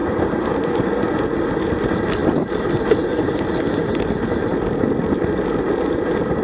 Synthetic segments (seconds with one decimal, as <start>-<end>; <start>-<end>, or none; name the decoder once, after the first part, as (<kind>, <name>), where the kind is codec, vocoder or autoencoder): none